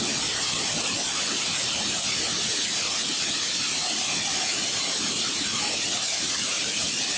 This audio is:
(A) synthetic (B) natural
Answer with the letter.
B